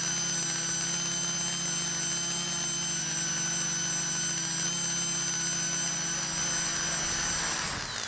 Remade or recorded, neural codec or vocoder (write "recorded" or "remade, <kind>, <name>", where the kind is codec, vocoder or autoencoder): recorded